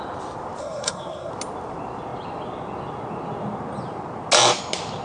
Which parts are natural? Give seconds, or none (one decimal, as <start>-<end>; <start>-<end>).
0.0-0.6; 1.3-5.0